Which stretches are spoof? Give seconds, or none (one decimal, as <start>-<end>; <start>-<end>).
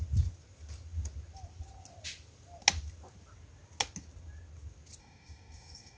5.0-6.0